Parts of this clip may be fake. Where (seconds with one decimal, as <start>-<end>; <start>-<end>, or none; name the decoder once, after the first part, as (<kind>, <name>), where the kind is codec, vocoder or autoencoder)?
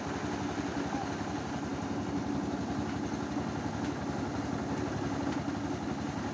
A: none